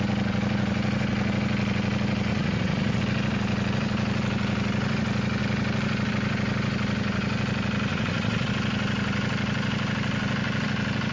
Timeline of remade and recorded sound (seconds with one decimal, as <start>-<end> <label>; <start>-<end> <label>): 0.0-2.3 recorded; 2.3-3.0 remade; 3.0-7.9 recorded; 7.9-8.5 remade; 8.5-11.1 recorded